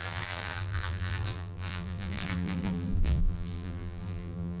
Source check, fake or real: fake